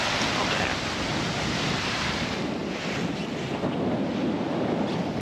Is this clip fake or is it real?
real